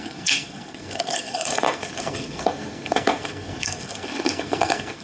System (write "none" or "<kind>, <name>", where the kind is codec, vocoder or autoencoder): codec, SNAC